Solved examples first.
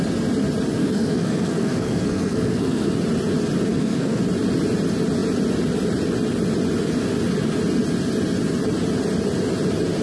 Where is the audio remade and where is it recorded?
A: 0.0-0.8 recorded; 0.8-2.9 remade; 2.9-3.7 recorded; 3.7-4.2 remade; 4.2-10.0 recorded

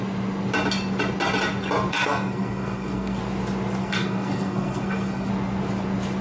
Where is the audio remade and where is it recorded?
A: 0.0-1.9 recorded; 1.9-3.2 remade; 3.2-3.8 recorded; 3.8-5.3 remade; 5.3-6.2 recorded

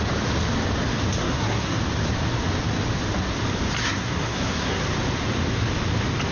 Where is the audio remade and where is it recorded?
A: 0.0-1.2 recorded; 1.2-1.8 remade; 1.8-3.8 recorded; 3.8-4.8 remade; 4.8-6.3 recorded

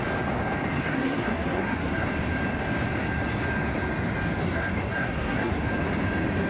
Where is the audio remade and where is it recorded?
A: 0.0-0.8 recorded; 0.8-2.1 remade; 2.1-4.4 recorded; 4.4-5.6 remade; 5.6-6.5 recorded

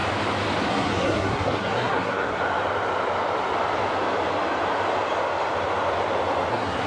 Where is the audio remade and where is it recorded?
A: 0.0-0.7 recorded; 0.7-2.4 remade; 2.4-6.5 recorded; 6.5-6.9 remade

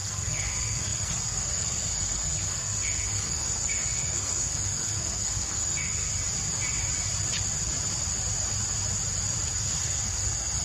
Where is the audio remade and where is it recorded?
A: 0.0-6.1 remade; 6.1-9.8 recorded; 9.8-10.6 remade